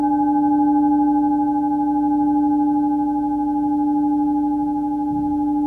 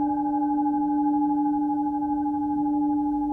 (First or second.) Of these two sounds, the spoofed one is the second